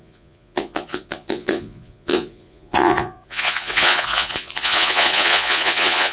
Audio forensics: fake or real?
fake